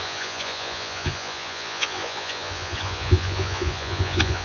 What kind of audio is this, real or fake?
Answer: fake